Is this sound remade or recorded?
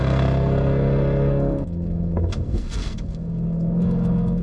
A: remade